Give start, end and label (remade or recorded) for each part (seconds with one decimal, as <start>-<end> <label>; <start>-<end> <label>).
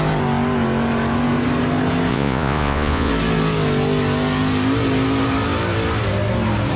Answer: 0.0-2.1 recorded; 2.1-3.1 remade; 3.1-6.8 recorded